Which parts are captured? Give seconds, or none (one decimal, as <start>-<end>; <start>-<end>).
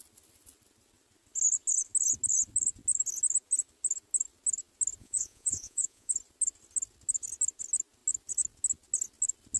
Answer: 0.0-5.0; 6.1-9.6